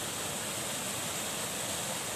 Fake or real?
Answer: real